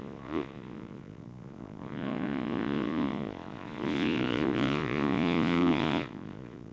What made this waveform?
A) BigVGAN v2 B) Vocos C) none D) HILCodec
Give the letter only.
B